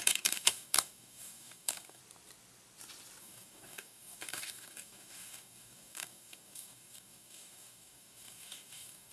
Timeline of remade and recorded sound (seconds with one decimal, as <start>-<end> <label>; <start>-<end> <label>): 0.0-2.0 remade; 2.0-3.2 recorded; 3.2-9.1 remade